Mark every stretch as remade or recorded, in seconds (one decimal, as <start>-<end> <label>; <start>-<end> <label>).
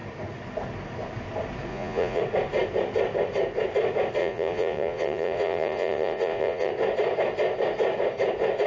0.0-1.7 recorded; 1.7-2.2 remade; 2.2-4.2 recorded; 4.2-6.7 remade; 6.7-8.7 recorded